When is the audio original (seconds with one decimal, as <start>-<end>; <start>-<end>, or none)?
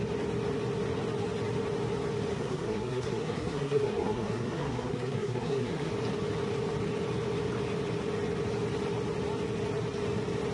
0.0-2.3; 5.9-10.5